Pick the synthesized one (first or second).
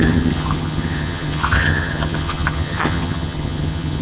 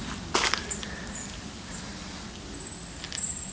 first